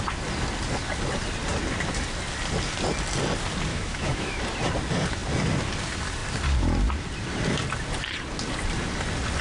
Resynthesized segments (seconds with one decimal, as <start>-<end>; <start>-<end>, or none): 3.7-4.4